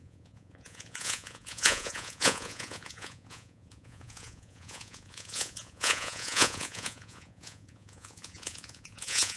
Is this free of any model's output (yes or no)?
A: no